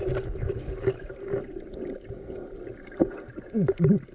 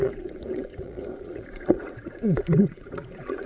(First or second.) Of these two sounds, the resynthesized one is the second